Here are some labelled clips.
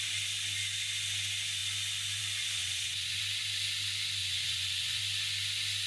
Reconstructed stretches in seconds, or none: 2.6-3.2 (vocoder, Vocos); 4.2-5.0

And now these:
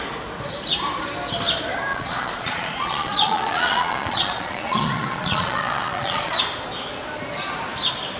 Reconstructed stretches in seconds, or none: 1.9-6.4 (vocoder, Vocos)

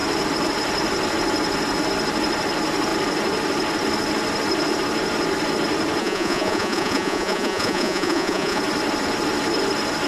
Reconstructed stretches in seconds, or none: 6.0-8.6 (vocoder, Vocos)

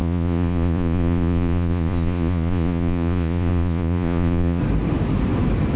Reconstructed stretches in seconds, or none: 0.0-4.6 (vocoder, Vocos)

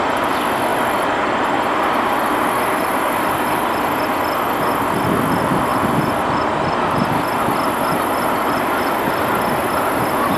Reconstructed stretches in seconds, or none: none